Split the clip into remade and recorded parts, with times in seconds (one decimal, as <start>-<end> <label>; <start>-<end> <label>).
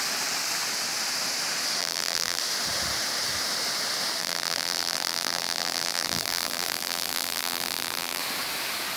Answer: 0.0-1.8 recorded; 1.8-2.4 remade; 2.4-4.2 recorded; 4.2-8.2 remade; 8.2-9.0 recorded